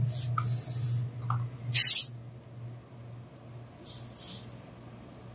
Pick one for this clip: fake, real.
real